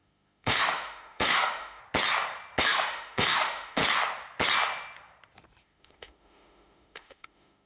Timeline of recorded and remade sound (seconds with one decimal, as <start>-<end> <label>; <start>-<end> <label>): 0.0-1.8 remade; 1.8-2.6 recorded; 2.6-3.8 remade; 3.8-5.6 recorded; 5.6-7.7 remade